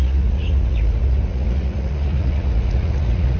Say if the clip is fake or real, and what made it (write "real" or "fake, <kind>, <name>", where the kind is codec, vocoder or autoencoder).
fake, vocoder, Vocos